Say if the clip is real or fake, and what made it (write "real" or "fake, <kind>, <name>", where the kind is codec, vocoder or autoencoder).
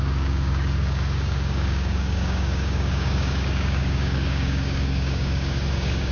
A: fake, codec, DAC